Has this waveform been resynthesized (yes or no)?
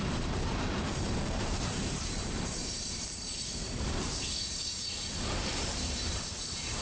yes